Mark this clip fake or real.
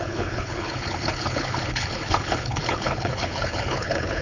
fake